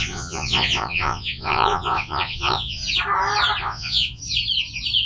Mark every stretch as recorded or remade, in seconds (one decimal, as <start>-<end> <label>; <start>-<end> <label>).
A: 0.0-2.8 remade; 2.8-3.6 recorded; 3.6-4.2 remade; 4.2-5.1 recorded